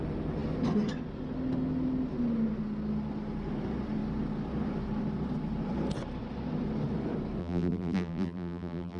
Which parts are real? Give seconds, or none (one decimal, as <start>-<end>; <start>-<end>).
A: 0.0-7.4